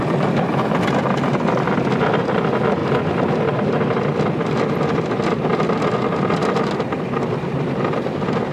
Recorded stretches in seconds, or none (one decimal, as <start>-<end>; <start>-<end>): 0.0-8.5